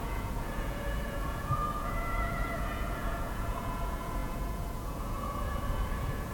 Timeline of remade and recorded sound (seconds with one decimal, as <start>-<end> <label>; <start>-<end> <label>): 0.0-6.3 remade